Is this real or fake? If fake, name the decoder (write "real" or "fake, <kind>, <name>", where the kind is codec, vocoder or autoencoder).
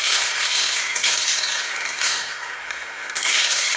fake, codec, SNAC